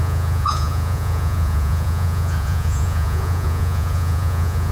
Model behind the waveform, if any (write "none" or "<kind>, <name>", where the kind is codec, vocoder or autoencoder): vocoder, Vocos